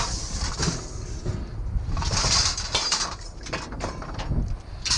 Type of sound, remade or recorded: recorded